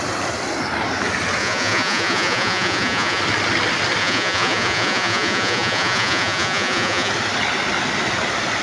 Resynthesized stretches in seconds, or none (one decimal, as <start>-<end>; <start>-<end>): 1.4-3.2; 4.0-7.1